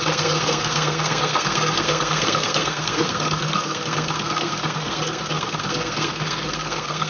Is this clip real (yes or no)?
no